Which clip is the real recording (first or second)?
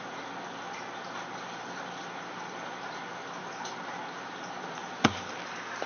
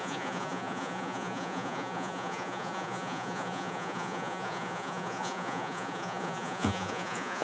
first